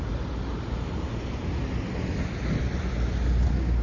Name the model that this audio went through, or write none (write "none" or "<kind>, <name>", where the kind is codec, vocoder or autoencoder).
none